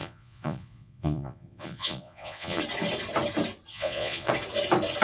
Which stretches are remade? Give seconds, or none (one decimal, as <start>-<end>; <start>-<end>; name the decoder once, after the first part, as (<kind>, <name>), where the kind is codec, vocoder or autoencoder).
0.0-2.6 (vocoder, Vocos); 3.7-4.3